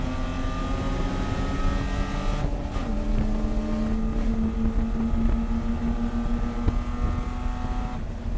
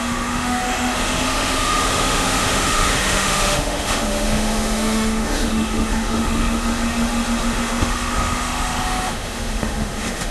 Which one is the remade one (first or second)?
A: second